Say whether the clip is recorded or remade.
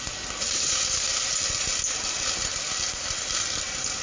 recorded